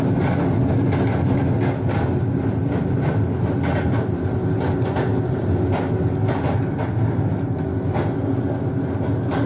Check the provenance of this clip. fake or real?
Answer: real